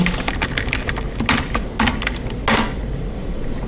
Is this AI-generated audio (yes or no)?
no